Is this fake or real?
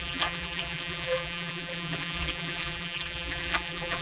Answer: fake